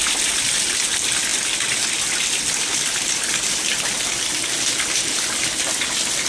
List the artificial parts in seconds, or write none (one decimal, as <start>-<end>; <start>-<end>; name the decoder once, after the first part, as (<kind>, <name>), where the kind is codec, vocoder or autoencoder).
none